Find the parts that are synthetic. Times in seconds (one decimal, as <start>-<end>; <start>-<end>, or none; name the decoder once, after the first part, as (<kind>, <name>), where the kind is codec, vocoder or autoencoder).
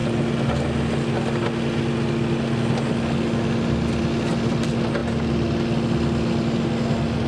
none